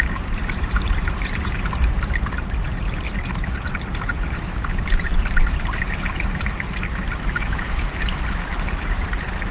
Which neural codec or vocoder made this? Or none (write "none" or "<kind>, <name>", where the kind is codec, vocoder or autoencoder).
vocoder, BigVGAN v2